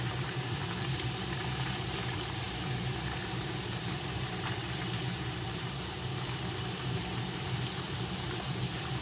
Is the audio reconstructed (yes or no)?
yes